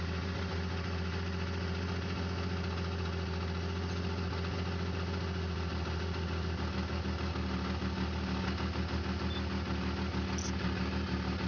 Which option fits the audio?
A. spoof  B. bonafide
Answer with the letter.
B